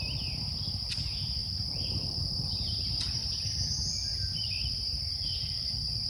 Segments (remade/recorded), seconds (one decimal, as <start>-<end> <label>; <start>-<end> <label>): 0.0-1.4 recorded; 1.4-2.7 remade; 2.7-3.2 recorded; 3.2-6.1 remade